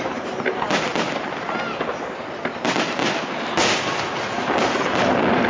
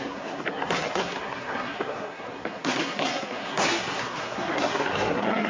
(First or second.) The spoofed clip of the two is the second